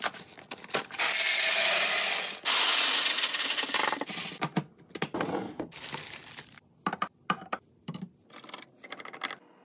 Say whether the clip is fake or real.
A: real